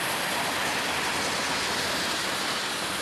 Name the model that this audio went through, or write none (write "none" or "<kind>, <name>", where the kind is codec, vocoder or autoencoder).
none